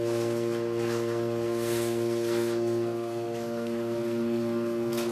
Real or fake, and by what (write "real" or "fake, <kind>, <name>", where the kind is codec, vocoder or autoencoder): fake, codec, SNAC